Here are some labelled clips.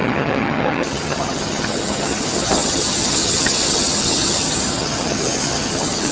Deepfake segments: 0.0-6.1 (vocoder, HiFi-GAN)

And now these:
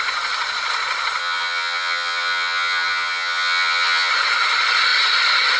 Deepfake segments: 1.2-4.1 (vocoder, HiFi-GAN)

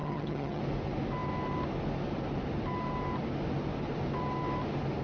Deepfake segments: 0.0-0.6 (vocoder, HiFi-GAN)

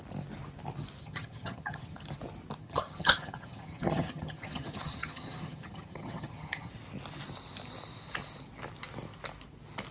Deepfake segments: 1.0-2.1 (vocoder, HiFi-GAN); 2.6-6.7

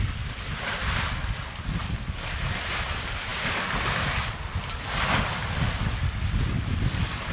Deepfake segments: none

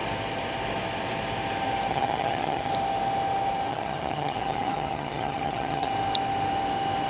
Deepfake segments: 1.9-2.7 (vocoder, HiFi-GAN); 3.7-5.9